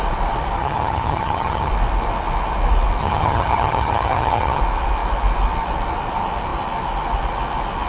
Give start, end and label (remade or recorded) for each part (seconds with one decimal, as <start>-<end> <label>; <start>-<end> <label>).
0.0-0.6 recorded; 0.6-1.7 remade; 1.7-3.0 recorded; 3.0-4.6 remade; 4.6-7.9 recorded

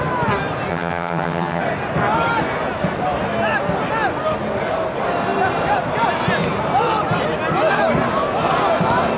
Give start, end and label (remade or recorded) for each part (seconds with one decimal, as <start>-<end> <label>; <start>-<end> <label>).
0.0-0.7 recorded; 0.7-1.6 remade; 1.6-9.2 recorded